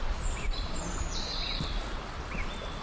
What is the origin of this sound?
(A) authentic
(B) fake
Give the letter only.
A